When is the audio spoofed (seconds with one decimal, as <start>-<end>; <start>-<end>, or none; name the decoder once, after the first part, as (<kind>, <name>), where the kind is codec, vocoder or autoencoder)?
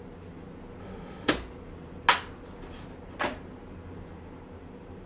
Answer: 0.8-1.3 (autoencoder, DAC-VAE)